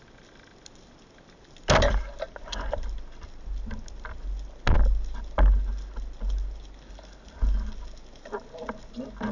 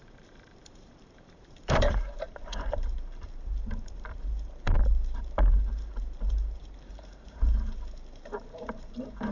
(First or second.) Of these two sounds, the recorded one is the first